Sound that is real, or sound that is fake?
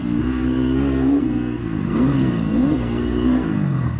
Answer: fake